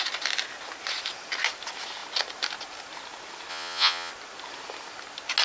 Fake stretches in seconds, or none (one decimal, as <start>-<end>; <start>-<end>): 3.5-4.1